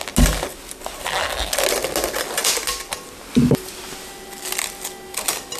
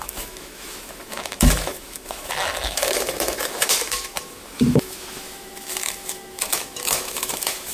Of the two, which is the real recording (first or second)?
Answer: first